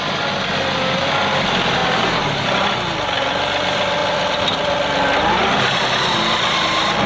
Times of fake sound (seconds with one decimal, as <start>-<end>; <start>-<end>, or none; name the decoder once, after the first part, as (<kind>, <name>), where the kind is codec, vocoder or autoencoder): 1.8-2.7 (vocoder, BigVGAN v2)